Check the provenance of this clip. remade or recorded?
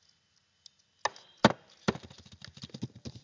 recorded